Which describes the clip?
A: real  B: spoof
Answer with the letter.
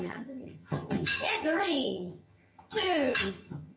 B